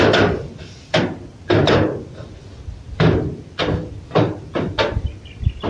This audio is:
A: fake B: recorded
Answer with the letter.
B